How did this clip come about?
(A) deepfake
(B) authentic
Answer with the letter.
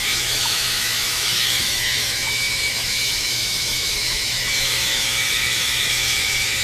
A